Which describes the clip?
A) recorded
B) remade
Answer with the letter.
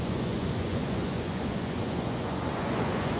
B